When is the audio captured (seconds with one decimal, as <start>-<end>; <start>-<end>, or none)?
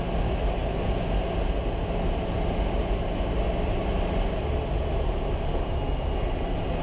0.0-6.8